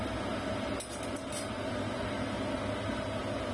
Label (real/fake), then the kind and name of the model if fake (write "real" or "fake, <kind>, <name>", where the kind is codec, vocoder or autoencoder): real